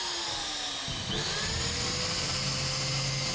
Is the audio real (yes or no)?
yes